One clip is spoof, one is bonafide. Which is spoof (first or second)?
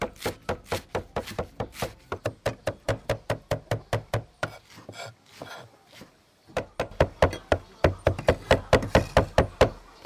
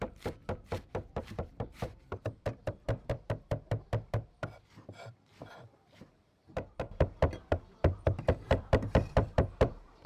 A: second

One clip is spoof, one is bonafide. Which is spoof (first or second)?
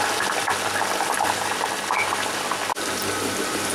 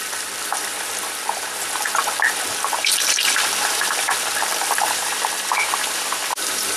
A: second